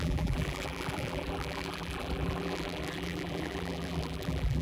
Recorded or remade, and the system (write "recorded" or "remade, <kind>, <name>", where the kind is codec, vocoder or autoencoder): remade, vocoder, BigVGAN v2